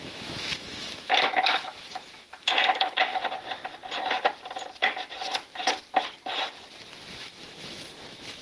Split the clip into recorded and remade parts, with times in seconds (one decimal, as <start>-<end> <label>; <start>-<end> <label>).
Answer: 0.0-3.1 remade; 3.1-7.1 recorded; 7.1-8.4 remade